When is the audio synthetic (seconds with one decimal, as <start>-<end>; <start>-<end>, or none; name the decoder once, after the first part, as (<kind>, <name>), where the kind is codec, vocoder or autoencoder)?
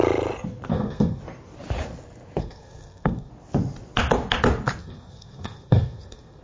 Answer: 0.7-1.2 (codec, SNAC); 2.4-3.3; 4.8-6.4